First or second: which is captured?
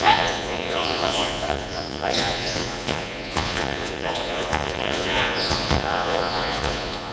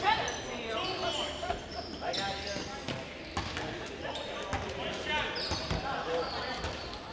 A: second